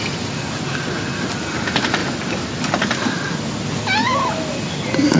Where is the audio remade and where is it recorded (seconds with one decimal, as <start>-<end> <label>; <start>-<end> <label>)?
0.0-5.2 recorded